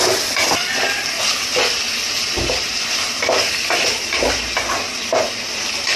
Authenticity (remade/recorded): recorded